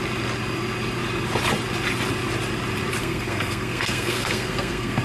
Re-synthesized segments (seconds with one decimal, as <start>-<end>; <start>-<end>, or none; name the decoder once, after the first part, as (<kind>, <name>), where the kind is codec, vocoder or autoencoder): 3.0-5.0 (codec, SNAC)